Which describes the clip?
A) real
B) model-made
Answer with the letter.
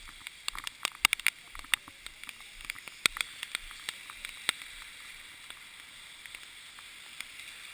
A